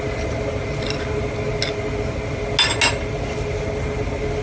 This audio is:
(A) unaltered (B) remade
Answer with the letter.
A